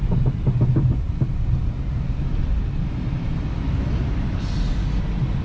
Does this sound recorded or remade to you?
recorded